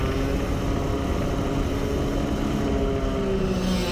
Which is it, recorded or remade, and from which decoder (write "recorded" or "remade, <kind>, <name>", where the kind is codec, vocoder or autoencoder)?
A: recorded